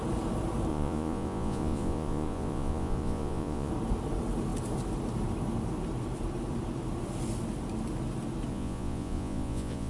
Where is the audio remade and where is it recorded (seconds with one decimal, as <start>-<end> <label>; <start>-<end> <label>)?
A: 0.0-0.7 recorded; 0.7-3.7 remade; 3.7-8.5 recorded; 8.5-9.9 remade